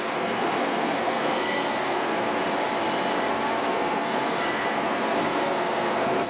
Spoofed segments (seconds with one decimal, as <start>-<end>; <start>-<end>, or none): 0.0-2.4; 3.3-6.3